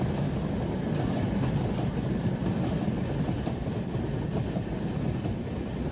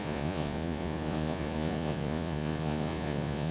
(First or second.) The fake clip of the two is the second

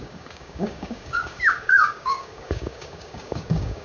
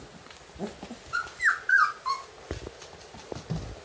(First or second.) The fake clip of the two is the first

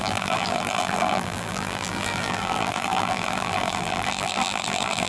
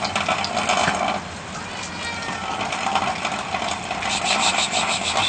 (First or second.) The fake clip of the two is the first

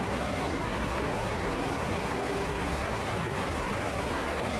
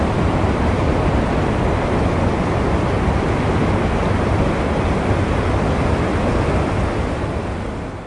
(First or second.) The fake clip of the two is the first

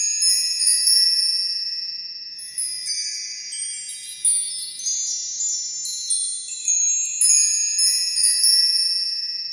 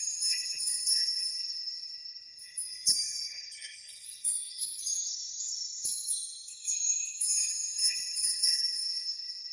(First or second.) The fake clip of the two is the second